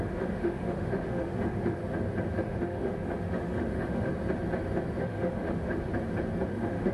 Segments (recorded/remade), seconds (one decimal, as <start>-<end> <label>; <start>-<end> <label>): 0.0-1.8 remade; 1.8-2.3 recorded; 2.3-4.1 remade; 4.1-5.0 recorded; 5.0-5.9 remade; 5.9-6.5 recorded; 6.5-6.9 remade